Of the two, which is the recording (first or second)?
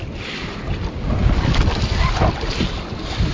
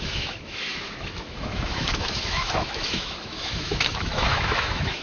first